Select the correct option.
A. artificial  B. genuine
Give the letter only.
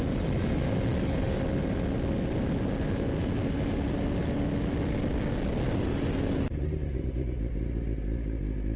B